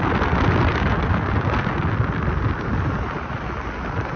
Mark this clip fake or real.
real